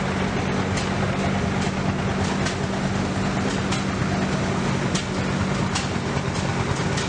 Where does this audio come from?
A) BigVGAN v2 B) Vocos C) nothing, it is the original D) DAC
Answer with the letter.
C